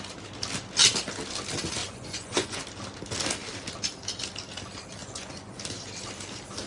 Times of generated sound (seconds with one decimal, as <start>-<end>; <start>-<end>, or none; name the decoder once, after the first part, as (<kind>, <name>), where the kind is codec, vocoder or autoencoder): 1.8-2.6 (vocoder, Vocos); 5.0-5.6